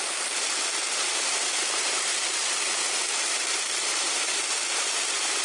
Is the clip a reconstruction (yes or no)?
yes